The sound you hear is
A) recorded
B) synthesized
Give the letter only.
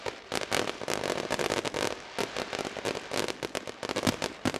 A